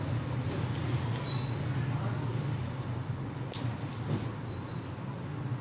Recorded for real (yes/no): yes